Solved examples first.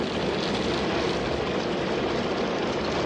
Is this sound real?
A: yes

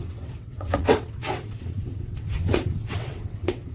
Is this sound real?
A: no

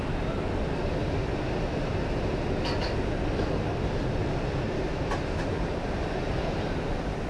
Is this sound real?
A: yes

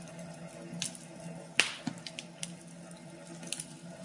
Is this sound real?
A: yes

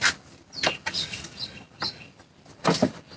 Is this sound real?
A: yes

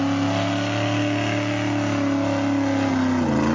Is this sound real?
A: yes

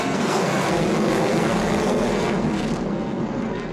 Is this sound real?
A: no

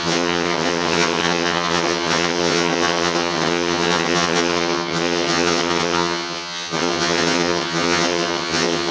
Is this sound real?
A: no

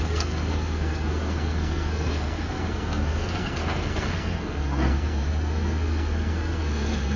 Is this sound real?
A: no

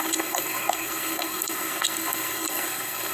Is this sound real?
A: no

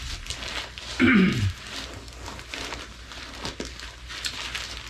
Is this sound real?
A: yes